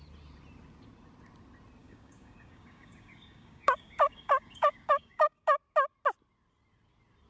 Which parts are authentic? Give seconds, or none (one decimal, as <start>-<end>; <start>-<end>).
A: 0.0-1.8; 5.6-7.3